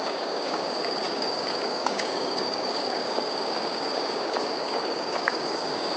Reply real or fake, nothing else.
fake